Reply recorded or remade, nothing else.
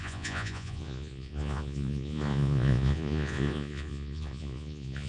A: remade